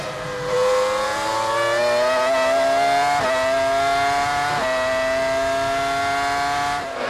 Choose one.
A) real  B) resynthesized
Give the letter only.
A